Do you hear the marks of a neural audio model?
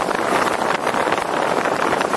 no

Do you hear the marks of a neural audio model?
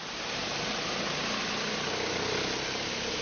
no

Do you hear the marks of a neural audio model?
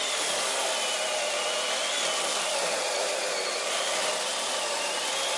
no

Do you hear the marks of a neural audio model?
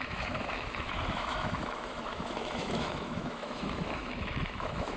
yes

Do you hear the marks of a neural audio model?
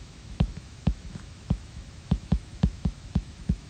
yes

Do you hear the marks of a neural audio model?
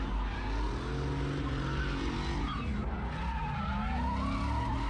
no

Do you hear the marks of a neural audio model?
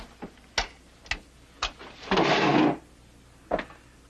no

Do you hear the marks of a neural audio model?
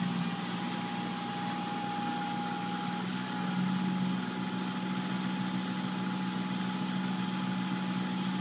no